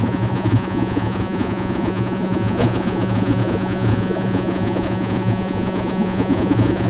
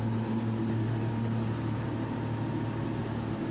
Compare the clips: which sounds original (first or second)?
second